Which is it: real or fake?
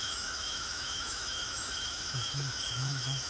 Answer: fake